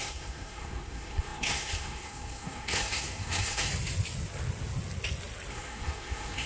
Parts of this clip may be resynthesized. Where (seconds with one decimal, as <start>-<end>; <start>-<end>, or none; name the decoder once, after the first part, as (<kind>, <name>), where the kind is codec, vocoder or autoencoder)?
0.0-3.7 (codec, SNAC); 5.5-6.5